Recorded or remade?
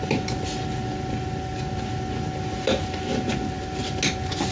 recorded